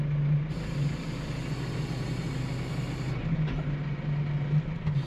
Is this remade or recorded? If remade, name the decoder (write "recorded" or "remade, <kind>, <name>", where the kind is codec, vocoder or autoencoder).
recorded